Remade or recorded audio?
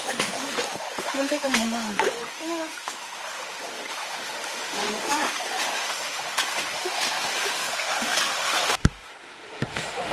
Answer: remade